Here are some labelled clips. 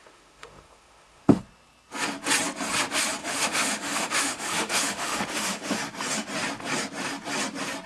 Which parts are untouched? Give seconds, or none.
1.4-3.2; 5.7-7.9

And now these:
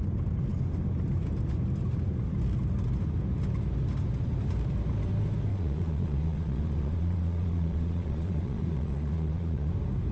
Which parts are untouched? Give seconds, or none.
0.0-5.5; 9.7-10.1

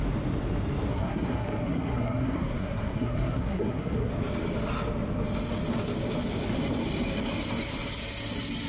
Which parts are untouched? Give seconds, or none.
0.0-0.9; 4.1-8.7

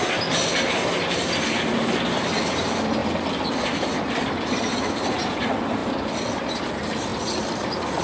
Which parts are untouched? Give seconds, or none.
0.0-3.0; 4.1-5.8; 6.6-8.0